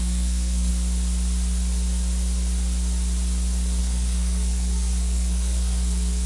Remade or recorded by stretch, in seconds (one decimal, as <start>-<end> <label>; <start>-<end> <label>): 0.0-0.7 remade; 0.7-3.8 recorded; 3.8-6.3 remade